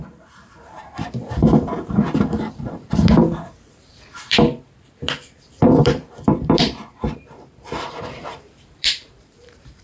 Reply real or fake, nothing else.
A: fake